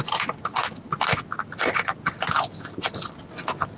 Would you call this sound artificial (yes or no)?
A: no